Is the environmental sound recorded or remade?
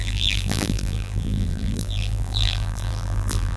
remade